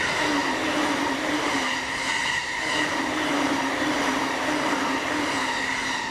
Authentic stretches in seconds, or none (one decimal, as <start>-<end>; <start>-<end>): 4.1-6.1